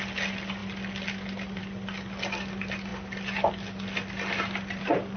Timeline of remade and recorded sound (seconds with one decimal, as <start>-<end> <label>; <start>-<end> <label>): 0.0-5.2 recorded